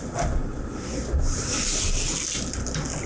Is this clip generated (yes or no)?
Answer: no